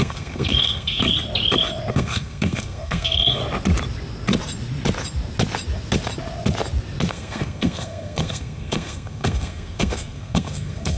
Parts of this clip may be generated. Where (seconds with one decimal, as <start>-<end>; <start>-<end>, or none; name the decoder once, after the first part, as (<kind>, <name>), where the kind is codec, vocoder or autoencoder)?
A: 0.0-1.1 (codec, SNAC); 1.9-3.4; 7.1-11.0